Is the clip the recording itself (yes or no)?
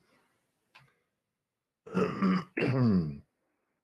no